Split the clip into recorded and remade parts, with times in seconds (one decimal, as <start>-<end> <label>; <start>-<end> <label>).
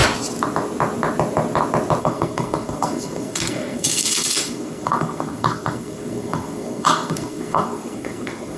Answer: 0.0-2.0 recorded; 2.0-8.6 remade